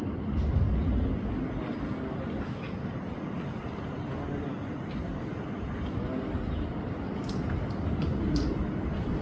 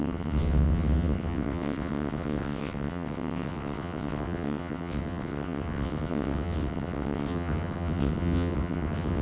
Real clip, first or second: first